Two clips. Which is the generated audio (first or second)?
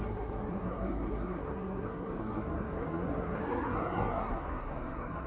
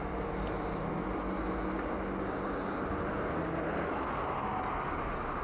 first